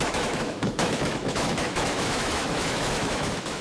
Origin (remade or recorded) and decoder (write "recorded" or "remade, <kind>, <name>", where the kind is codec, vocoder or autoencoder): remade, autoencoder, DAC-VAE